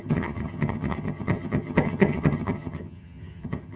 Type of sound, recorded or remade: remade